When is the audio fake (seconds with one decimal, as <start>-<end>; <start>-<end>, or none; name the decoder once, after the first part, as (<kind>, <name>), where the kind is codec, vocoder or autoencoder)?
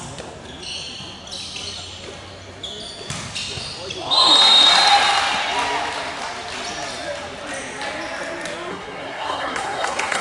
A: 8.7-10.2 (codec, SNAC)